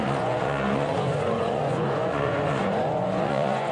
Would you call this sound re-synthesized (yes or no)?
yes